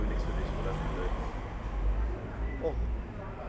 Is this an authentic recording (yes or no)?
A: yes